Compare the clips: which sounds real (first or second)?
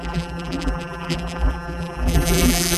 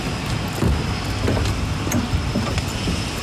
second